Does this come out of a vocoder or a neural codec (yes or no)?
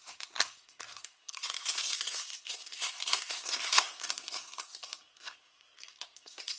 yes